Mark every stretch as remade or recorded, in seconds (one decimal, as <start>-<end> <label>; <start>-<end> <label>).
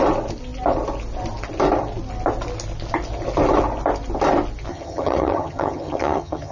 0.0-4.7 recorded; 4.7-6.5 remade